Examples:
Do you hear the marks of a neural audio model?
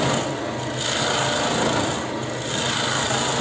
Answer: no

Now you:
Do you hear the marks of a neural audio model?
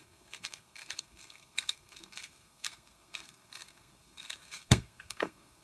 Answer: yes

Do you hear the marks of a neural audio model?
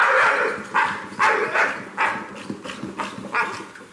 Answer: no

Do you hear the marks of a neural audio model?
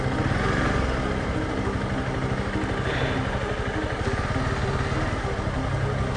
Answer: no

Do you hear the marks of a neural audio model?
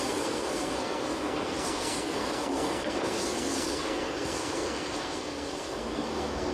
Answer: yes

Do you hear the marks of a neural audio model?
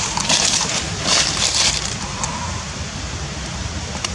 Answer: no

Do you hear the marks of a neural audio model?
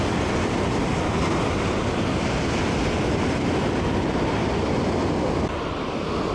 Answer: no